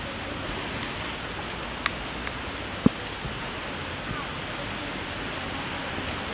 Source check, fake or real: real